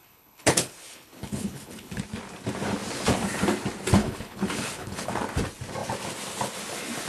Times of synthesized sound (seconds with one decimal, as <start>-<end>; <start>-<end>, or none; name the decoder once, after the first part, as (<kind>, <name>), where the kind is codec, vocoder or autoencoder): 0.0-2.0 (codec, HILCodec); 4.0-5.1